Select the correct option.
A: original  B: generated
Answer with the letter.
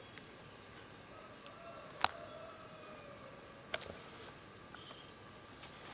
A